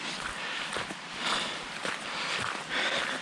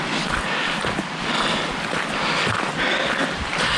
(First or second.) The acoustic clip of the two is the second